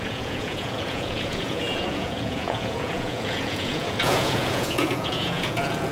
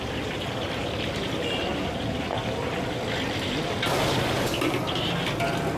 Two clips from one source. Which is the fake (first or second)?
first